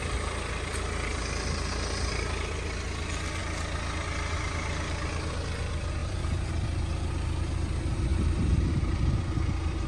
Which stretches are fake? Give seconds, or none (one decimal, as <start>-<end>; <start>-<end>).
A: 1.1-1.7; 6.0-6.5; 8.1-8.7